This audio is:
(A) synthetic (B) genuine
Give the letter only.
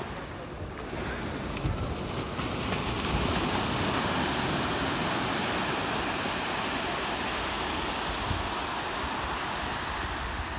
B